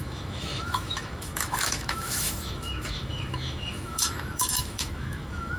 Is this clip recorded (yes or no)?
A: no